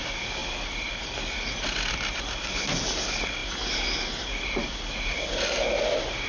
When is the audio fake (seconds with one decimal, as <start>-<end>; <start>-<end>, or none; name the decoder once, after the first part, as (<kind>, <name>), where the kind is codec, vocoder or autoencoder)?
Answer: none